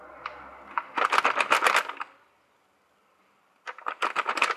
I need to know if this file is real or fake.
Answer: real